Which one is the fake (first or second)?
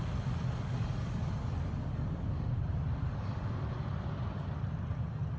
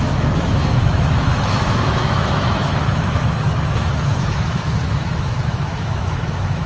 second